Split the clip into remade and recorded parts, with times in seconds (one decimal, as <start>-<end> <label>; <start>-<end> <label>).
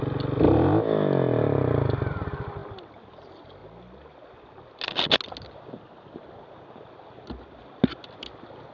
0.0-8.7 recorded